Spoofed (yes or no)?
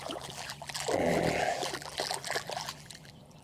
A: yes